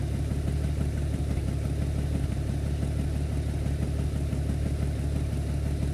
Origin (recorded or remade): recorded